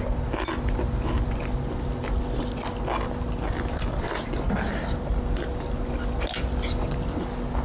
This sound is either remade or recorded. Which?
recorded